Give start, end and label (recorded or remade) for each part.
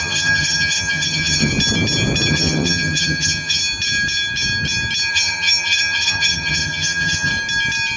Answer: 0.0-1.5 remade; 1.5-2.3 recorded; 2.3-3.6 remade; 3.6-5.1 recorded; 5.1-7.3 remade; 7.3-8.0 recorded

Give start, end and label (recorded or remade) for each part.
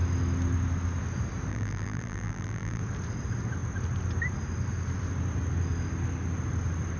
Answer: 0.0-1.5 recorded; 1.5-2.8 remade; 2.8-7.0 recorded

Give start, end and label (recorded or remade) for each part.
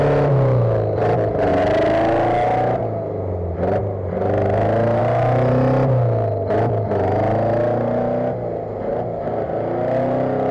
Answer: 0.0-10.5 recorded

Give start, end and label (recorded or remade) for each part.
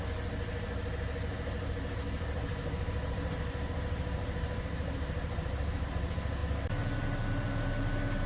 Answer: 0.0-1.3 recorded; 1.3-5.9 remade; 5.9-8.3 recorded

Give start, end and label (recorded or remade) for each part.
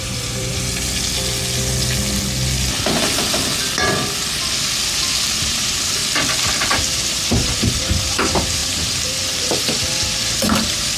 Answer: 0.0-0.5 remade; 0.5-5.3 recorded; 5.3-6.0 remade; 6.0-6.6 recorded; 6.6-11.0 remade